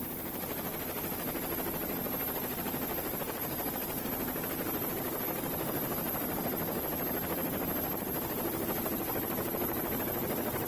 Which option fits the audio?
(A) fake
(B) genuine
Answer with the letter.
B